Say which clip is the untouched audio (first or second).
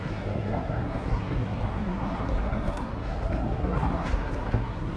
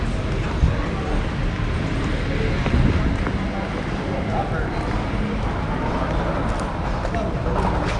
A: second